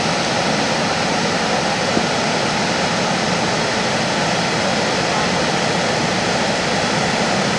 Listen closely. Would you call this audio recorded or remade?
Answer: recorded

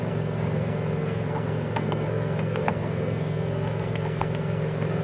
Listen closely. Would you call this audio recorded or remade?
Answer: remade